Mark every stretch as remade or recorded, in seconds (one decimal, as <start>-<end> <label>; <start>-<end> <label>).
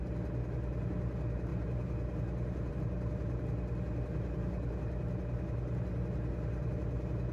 0.0-7.3 recorded